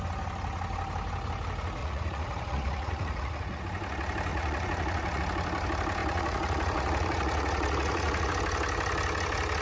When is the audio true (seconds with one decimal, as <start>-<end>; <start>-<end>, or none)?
0.0-1.8; 3.6-4.3; 5.2-6.0; 8.3-9.6

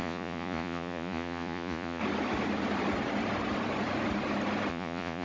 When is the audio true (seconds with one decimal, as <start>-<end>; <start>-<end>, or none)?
2.0-4.7

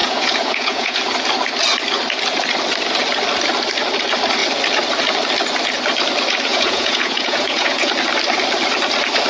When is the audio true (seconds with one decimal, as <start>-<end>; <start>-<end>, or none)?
1.0-6.5; 7.9-9.3

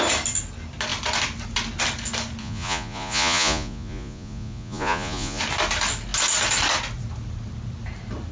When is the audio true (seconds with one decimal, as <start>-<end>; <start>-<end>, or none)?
0.0-2.4; 5.4-8.3

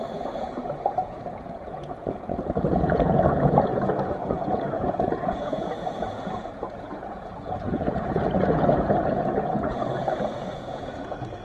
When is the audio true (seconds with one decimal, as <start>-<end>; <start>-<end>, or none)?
none